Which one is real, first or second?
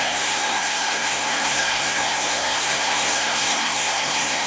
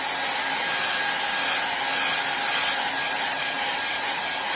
second